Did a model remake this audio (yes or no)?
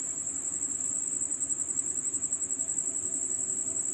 no